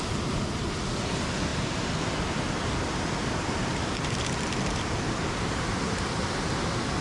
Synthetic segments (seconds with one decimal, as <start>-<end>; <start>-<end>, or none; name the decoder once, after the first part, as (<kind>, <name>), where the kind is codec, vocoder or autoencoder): none